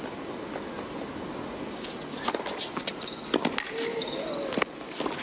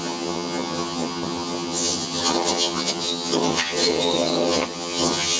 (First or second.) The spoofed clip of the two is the second